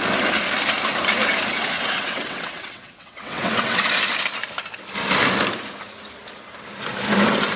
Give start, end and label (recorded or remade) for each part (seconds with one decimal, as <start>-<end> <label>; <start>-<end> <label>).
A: 0.0-1.5 recorded; 1.5-3.8 remade; 3.8-7.6 recorded